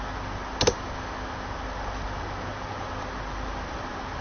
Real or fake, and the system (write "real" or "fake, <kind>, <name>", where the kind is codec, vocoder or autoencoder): real